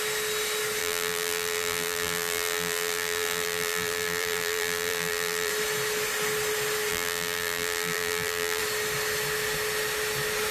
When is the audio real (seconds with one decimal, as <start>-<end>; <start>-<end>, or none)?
0.0-0.8; 5.5-6.9; 8.6-10.5